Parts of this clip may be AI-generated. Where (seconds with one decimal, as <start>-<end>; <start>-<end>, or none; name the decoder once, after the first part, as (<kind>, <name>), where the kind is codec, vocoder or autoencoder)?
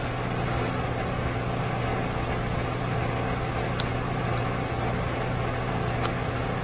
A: none